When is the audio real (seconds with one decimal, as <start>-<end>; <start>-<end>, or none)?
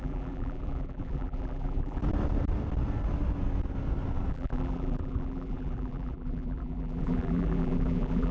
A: 2.0-4.3